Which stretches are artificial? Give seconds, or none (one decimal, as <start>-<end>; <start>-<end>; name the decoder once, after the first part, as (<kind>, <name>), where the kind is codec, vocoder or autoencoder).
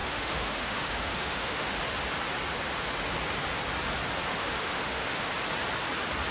0.0-1.8 (autoencoder, DAC-VAE); 4.3-5.3